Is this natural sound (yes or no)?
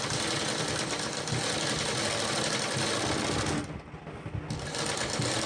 yes